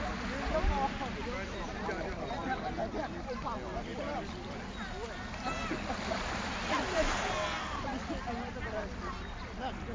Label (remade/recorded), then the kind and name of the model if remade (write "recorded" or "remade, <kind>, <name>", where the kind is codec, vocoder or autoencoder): recorded